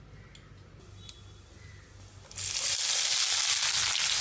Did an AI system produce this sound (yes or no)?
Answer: no